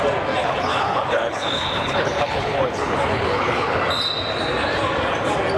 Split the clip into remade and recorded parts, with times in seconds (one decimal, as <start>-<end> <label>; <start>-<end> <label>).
0.0-0.4 recorded; 0.4-3.8 remade; 3.8-5.6 recorded